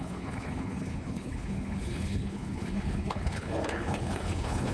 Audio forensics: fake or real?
fake